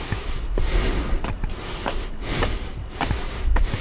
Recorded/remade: recorded